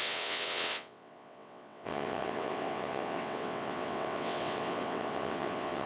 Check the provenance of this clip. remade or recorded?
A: remade